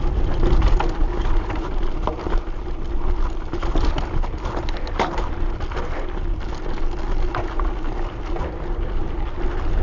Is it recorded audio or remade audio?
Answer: recorded